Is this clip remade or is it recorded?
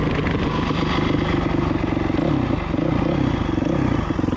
recorded